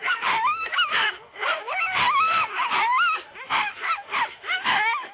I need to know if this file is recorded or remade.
remade